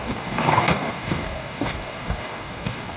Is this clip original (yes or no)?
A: no